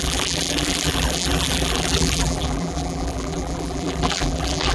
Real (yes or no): no